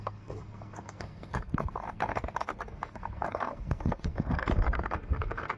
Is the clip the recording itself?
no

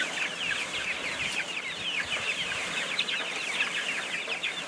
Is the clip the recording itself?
yes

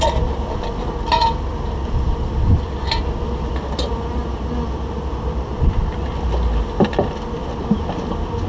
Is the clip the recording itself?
yes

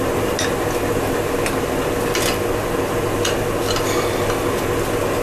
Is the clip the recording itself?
yes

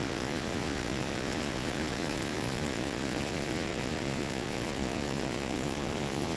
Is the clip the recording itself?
no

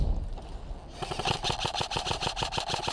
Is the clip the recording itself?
yes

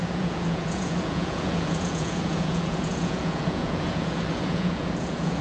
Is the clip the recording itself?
no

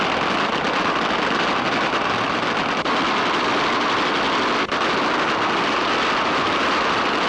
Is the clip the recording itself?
yes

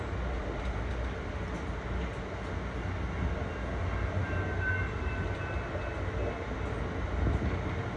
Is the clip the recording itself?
yes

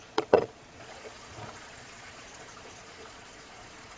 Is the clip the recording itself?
no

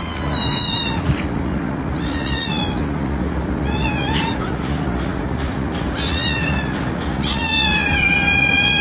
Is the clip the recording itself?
no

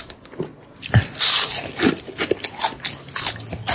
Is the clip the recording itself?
yes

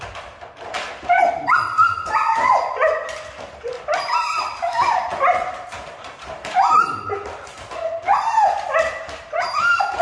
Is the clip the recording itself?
no